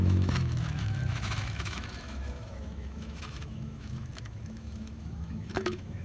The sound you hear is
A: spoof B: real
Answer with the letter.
A